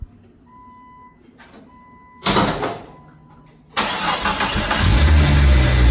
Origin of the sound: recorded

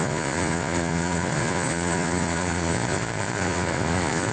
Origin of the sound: remade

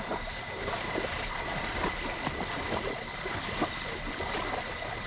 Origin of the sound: remade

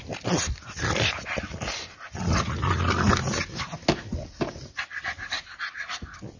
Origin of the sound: recorded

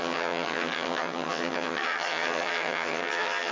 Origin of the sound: remade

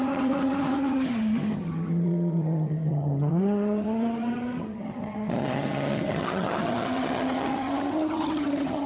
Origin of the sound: remade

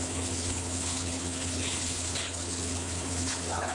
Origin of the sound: remade